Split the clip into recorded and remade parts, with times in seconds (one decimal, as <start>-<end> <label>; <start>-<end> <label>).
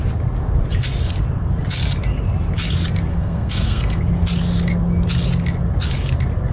0.0-3.1 recorded; 3.1-4.0 remade; 4.0-6.5 recorded